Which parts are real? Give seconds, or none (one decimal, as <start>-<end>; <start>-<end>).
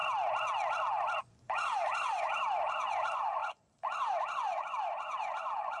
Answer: 0.0-1.2